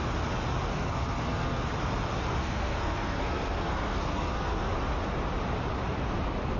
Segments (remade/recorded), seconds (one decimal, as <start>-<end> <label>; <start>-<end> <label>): 0.0-0.7 recorded; 0.7-1.6 remade; 1.6-2.4 recorded; 2.4-4.7 remade; 4.7-6.6 recorded